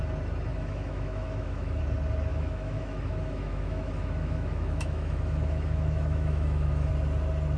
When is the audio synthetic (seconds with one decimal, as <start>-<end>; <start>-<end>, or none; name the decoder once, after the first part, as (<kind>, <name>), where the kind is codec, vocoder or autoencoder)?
0.5-1.8 (autoencoder, DAC-VAE); 2.3-6.9